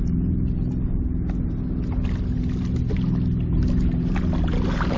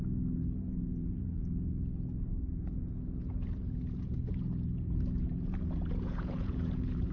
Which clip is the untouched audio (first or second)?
first